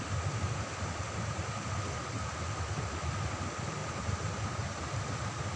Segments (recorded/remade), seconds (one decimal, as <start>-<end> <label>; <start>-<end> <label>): 0.0-3.8 recorded; 3.8-4.8 remade; 4.8-5.6 recorded